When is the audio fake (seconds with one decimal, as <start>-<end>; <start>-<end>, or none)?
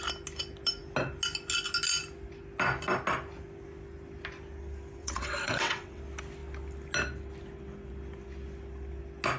5.0-6.0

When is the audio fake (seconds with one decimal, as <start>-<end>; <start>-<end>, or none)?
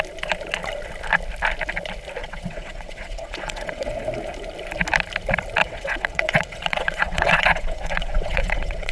2.2-3.9; 5.6-8.9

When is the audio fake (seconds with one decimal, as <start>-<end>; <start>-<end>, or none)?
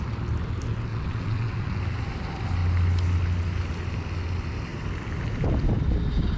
0.9-1.8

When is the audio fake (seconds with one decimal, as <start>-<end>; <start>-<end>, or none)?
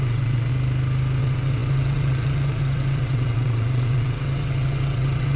0.0-0.5; 1.2-5.4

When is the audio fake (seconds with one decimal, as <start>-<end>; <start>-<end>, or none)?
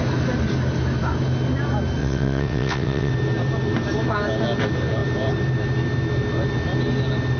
2.0-3.1